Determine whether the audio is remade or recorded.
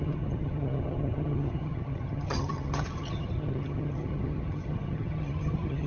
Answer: remade